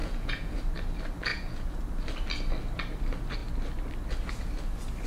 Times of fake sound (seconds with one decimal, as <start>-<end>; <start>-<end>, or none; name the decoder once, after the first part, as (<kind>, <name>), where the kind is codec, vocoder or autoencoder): 0.0-0.6 (vocoder, Vocos); 1.3-1.8